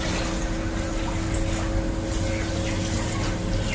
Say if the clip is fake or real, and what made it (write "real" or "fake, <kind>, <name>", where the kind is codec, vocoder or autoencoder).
real